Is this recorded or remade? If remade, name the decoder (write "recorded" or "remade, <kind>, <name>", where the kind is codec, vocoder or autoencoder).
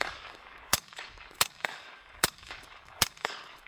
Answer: remade, codec, DAC